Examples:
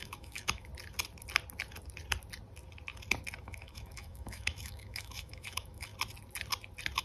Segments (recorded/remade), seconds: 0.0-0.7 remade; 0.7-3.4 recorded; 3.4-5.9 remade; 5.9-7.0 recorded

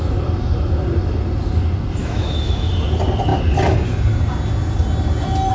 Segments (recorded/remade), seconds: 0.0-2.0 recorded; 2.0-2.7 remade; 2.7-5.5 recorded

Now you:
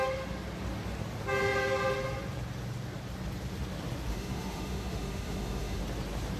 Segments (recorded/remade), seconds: 0.0-4.1 recorded; 4.1-5.8 remade; 5.8-6.4 recorded

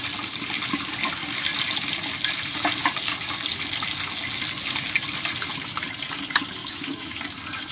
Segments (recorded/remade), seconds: 0.0-6.6 recorded; 6.6-7.2 remade; 7.2-7.7 recorded

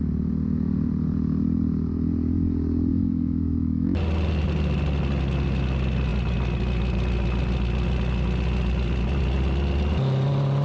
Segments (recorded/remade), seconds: 0.0-2.9 recorded; 2.9-4.0 remade; 4.0-10.6 recorded

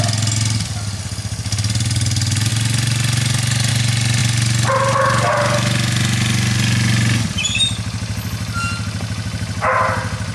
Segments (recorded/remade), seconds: 0.0-10.3 recorded

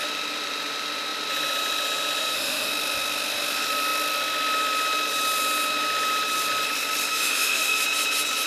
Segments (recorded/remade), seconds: 0.0-2.2 recorded; 2.2-2.7 remade; 2.7-7.1 recorded; 7.1-7.8 remade; 7.8-8.5 recorded